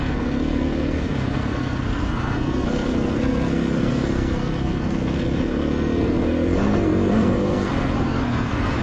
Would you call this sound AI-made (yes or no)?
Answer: yes